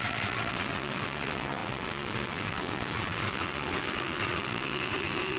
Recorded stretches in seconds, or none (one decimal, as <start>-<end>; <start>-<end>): none